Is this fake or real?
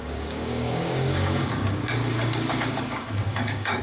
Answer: fake